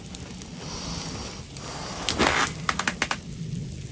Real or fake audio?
real